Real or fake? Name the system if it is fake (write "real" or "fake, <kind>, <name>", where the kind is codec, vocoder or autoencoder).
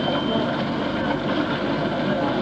real